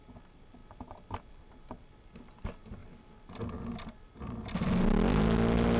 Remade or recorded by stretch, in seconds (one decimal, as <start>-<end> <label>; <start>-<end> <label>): 0.0-5.8 recorded